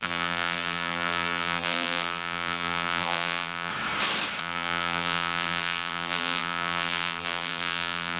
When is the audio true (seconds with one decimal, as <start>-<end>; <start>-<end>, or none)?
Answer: 3.7-4.4